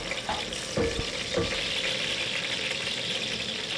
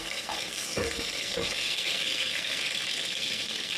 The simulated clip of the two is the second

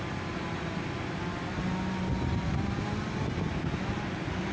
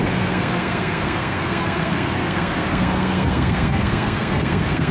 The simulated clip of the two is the second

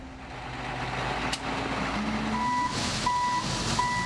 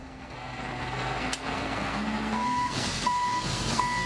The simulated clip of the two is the second